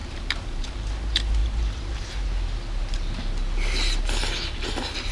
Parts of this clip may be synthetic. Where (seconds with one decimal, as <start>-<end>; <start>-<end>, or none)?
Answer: 0.0-0.7; 1.4-2.1